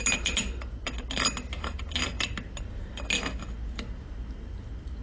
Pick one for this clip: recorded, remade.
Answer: recorded